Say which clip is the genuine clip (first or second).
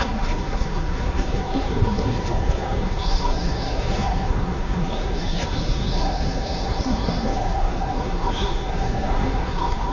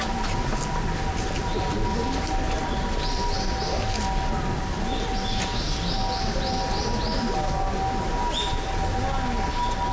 second